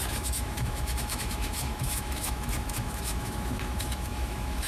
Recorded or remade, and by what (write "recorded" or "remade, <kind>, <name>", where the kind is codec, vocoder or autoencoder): remade, autoencoder, DAC-VAE